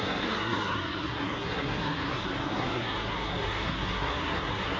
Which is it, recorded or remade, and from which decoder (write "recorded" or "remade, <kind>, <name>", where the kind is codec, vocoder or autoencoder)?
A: remade, codec, SNAC